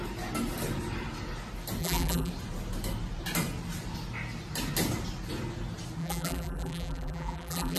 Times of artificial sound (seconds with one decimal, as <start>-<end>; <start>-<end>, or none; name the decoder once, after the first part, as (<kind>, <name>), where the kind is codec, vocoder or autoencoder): 1.8-2.3 (vocoder, BigVGAN v2); 6.0-7.8